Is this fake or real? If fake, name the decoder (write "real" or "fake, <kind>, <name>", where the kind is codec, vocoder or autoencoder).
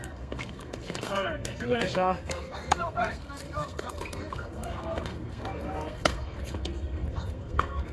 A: fake, codec, SNAC